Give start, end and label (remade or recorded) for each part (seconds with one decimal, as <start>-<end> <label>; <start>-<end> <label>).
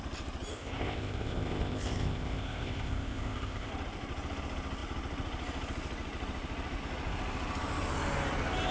0.0-0.5 recorded; 0.5-3.7 remade; 3.7-8.7 recorded